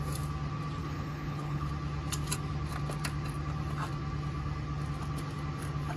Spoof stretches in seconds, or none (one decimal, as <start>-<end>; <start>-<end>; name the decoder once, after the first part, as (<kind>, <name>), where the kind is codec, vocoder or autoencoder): 0.8-1.7 (codec, HILCodec)